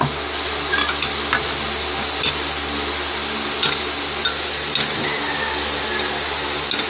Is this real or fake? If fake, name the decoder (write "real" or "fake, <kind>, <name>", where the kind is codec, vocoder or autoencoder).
real